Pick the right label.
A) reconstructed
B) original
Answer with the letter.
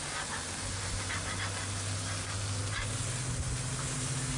B